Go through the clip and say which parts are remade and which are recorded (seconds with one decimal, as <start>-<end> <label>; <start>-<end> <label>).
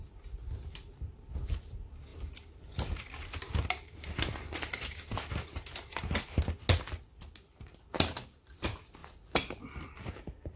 0.0-10.6 recorded